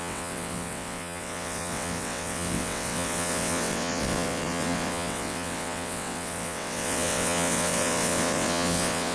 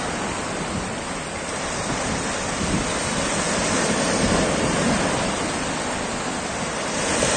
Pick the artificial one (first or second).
first